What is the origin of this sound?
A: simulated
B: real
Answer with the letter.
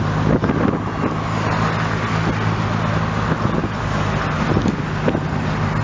B